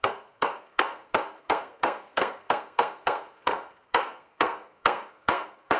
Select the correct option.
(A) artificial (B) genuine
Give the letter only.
A